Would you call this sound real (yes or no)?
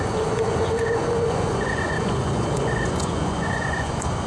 no